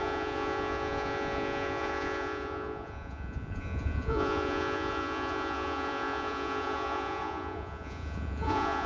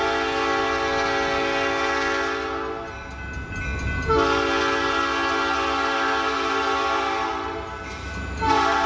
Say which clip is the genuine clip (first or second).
second